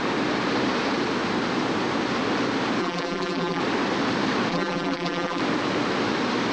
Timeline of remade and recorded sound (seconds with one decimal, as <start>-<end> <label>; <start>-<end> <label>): 0.0-2.8 recorded; 2.8-3.6 remade; 3.6-4.5 recorded; 4.5-5.4 remade; 5.4-6.5 recorded